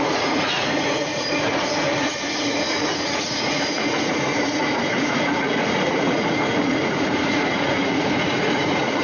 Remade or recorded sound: remade